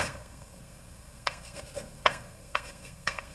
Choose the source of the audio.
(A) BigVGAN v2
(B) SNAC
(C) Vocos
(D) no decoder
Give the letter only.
B